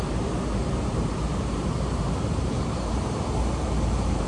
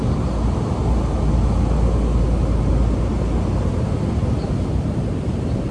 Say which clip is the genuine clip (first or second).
second